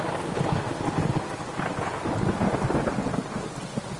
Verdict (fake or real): real